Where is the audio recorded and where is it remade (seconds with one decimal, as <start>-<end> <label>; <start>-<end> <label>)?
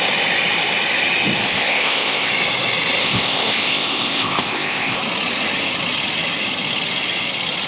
0.0-1.4 recorded; 1.4-2.3 remade; 2.3-3.0 recorded; 3.0-5.0 remade; 5.0-7.7 recorded